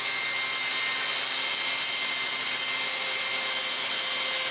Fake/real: real